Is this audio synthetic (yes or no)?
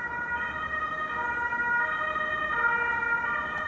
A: no